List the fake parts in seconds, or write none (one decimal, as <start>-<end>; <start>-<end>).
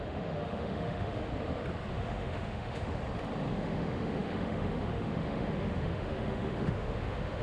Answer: 0.0-1.3; 1.9-3.0; 3.5-7.4